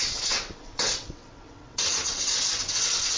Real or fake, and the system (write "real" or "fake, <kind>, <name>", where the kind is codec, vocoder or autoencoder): fake, vocoder, WaveNeXt